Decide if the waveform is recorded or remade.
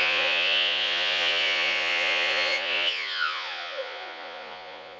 remade